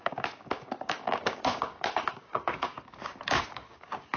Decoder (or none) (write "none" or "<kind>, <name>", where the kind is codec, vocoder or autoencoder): codec, DAC